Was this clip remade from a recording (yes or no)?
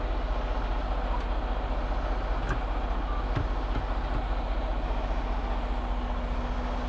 no